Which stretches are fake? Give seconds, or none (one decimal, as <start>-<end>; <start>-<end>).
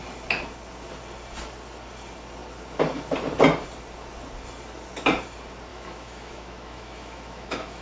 5.7-7.8